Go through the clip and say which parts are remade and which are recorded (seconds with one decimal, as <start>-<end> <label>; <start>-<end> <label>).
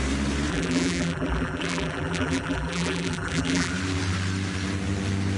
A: 0.0-0.5 recorded; 0.5-3.7 remade; 3.7-5.4 recorded